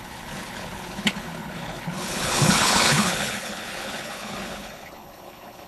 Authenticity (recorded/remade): remade